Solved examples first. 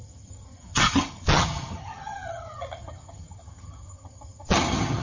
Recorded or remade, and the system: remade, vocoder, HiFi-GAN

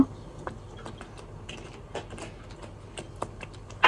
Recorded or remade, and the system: recorded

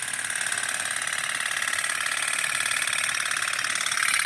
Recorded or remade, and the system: recorded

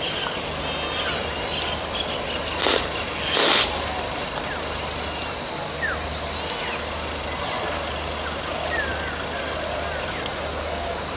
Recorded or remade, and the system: recorded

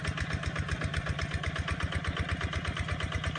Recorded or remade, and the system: recorded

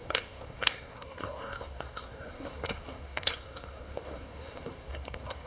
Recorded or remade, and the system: remade, codec, SNAC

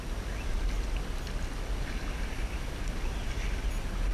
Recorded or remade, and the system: recorded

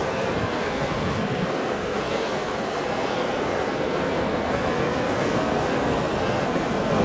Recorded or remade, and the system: remade, codec, SNAC